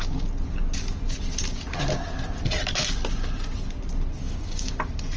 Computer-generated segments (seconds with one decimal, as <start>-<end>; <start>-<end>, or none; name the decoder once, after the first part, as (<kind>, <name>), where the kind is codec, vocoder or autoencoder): 4.2-4.7 (codec, DAC)